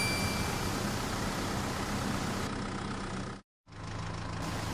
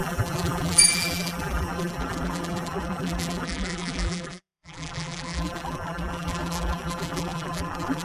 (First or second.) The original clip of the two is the first